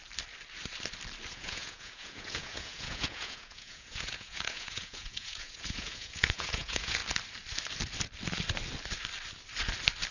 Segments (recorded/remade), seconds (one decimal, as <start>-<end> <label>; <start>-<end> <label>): 0.0-1.3 recorded; 1.3-7.0 remade; 7.0-10.1 recorded